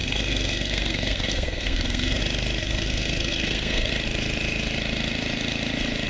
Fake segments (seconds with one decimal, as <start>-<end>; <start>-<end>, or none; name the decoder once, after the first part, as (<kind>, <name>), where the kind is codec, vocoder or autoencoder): 0.0-2.2 (codec, SNAC); 2.6-3.9